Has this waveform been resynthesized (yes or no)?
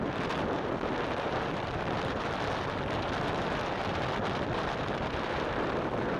yes